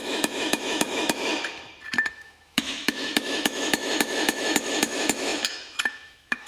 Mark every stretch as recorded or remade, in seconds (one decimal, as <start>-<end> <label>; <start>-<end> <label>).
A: 0.0-1.3 remade; 1.3-2.1 recorded; 2.1-6.5 remade